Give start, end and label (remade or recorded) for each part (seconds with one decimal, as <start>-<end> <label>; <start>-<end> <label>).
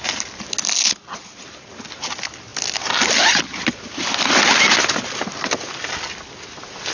0.0-6.9 recorded